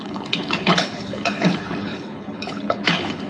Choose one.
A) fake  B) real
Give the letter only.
A